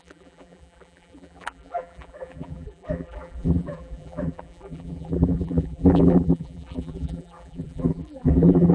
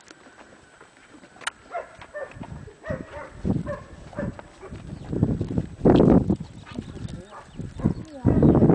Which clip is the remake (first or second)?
first